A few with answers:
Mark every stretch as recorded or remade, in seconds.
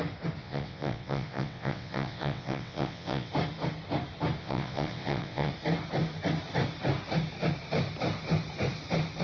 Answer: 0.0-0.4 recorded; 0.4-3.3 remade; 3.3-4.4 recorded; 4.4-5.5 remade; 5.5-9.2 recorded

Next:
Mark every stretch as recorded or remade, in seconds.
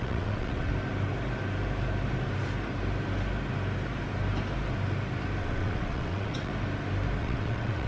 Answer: 0.0-0.7 remade; 0.7-5.4 recorded; 5.4-6.5 remade; 6.5-7.2 recorded; 7.2-7.9 remade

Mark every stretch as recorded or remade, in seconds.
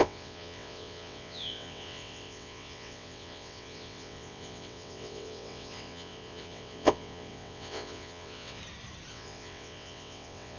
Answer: 0.0-8.6 remade; 8.6-9.1 recorded; 9.1-10.6 remade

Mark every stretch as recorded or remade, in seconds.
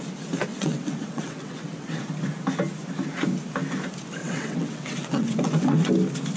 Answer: 0.0-0.5 recorded; 0.5-2.0 remade; 2.0-4.2 recorded; 4.2-5.9 remade; 5.9-6.4 recorded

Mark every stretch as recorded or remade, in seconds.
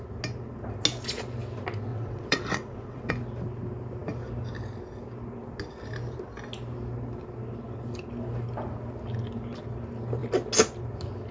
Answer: 0.0-1.9 recorded; 1.9-3.1 remade; 3.1-11.3 recorded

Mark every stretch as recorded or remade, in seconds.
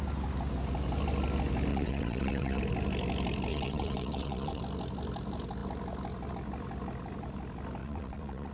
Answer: 0.0-1.7 recorded; 1.7-2.6 remade; 2.6-3.5 recorded; 3.5-4.6 remade; 4.6-7.8 recorded; 7.8-8.5 remade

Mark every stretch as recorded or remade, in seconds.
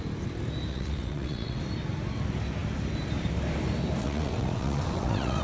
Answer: 0.0-0.7 recorded; 0.7-1.6 remade; 1.6-4.0 recorded; 4.0-5.4 remade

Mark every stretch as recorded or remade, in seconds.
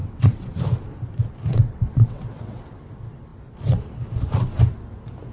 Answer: 0.0-0.6 remade; 0.6-1.5 recorded; 1.5-2.6 remade; 2.6-5.3 recorded